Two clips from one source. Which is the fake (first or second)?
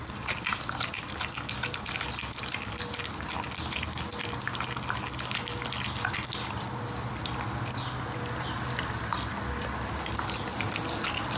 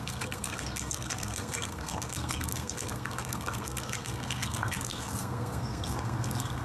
second